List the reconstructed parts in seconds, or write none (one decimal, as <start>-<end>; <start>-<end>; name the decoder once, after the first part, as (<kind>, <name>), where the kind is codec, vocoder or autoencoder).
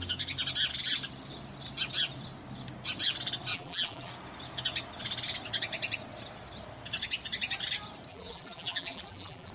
3.5-4.1 (vocoder, BigVGAN v2); 8.1-9.5